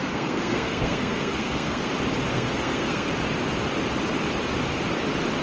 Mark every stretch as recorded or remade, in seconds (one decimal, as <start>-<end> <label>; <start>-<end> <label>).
0.0-1.9 remade; 1.9-2.3 recorded; 2.3-3.1 remade; 3.1-5.4 recorded